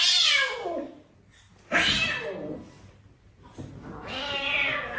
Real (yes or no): yes